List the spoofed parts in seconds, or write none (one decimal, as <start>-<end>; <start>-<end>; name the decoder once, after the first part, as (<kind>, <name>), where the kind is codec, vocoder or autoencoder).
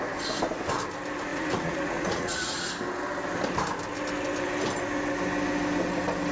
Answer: 1.3-2.7 (vocoder, Vocos)